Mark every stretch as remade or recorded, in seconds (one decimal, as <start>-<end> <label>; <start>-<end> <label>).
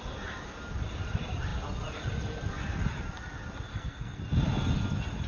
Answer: 0.0-3.7 recorded; 3.7-4.2 remade; 4.2-5.3 recorded